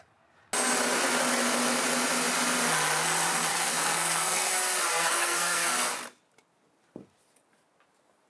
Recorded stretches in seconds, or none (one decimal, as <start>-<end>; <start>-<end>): 0.0-3.5; 4.5-4.9; 5.9-8.3